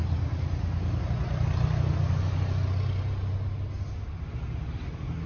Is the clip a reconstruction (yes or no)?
no